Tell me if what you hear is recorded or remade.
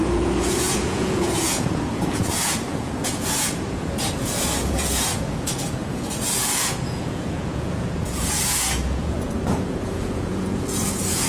remade